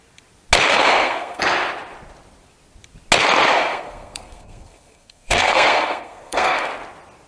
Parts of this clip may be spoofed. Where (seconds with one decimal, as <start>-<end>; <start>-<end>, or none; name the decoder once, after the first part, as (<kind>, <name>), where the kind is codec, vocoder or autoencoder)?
0.7-1.4 (codec, SNAC); 3.5-6.7

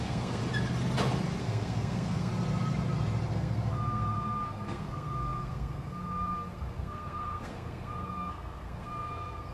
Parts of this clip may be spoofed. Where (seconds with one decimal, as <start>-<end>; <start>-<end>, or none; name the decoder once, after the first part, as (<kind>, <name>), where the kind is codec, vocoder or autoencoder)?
0.0-0.4 (codec, SNAC); 1.4-2.3; 3.3-9.5

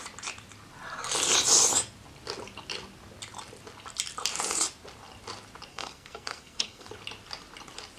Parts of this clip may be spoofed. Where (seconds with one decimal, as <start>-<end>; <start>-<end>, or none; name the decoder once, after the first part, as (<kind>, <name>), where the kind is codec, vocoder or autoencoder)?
5.7-6.9 (codec, SNAC)

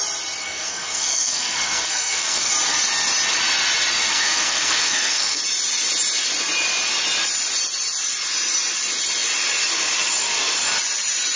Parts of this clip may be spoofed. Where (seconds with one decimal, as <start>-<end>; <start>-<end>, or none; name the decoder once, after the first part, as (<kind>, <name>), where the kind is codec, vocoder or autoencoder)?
0.4-2.5 (codec, SNAC); 4.1-5.4

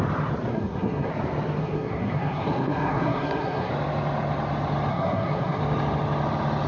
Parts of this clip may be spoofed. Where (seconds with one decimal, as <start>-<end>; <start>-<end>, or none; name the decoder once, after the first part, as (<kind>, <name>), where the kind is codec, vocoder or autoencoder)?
0.5-1.1 (codec, SNAC); 1.6-3.7; 4.9-5.6

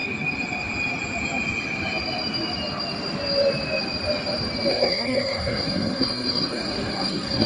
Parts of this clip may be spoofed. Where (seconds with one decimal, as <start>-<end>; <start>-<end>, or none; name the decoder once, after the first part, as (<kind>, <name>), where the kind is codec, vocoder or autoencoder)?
4.7-7.5 (codec, SNAC)

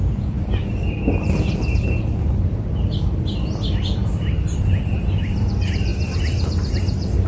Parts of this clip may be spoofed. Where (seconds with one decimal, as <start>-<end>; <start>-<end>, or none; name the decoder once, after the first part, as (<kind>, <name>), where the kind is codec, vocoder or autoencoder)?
none